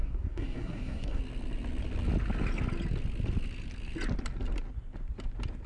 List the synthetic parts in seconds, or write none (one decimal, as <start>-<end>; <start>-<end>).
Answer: 0.0-1.2